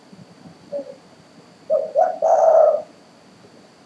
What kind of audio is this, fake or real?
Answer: real